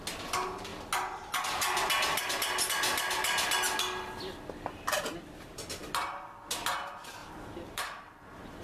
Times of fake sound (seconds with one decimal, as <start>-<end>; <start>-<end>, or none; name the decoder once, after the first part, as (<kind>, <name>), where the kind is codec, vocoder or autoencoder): 7.2-8.1 (vocoder, BigVGAN v2)